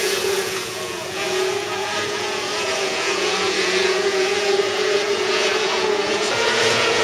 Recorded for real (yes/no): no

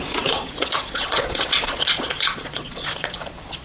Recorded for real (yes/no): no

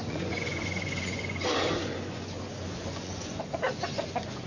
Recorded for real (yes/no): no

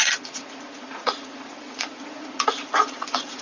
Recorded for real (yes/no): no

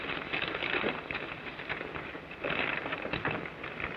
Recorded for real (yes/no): yes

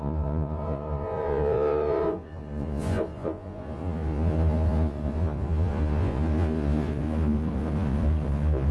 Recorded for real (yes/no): no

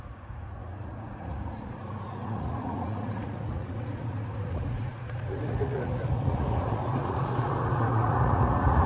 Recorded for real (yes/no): no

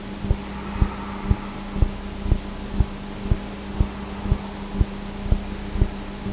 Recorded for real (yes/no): yes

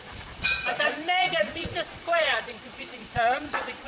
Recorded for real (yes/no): no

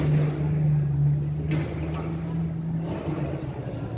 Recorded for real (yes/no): yes